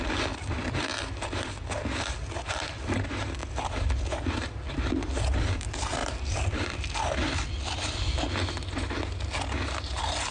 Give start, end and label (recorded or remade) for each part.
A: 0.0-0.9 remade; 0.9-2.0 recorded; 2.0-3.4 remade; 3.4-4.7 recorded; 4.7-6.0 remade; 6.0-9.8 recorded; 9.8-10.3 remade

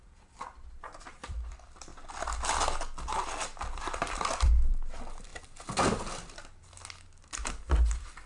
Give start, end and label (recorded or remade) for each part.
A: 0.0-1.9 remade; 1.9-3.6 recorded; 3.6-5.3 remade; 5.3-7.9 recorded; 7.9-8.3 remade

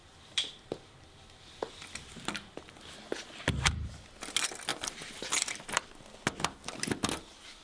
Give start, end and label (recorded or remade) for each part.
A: 0.0-2.7 remade; 2.7-4.7 recorded; 4.7-5.8 remade; 5.8-7.6 recorded

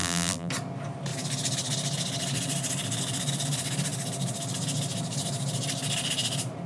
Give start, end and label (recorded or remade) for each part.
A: 0.0-0.5 remade; 0.5-6.7 recorded

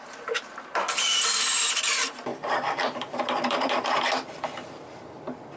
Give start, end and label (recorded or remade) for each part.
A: 0.0-2.3 recorded; 2.3-4.9 remade; 4.9-5.6 recorded